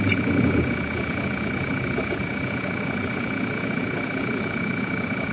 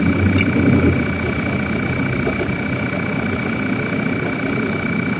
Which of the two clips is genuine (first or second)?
second